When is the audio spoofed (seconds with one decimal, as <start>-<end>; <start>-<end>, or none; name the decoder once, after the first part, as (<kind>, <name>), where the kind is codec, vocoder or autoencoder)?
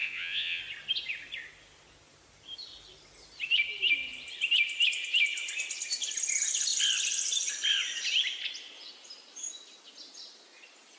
0.0-0.6 (vocoder, Vocos)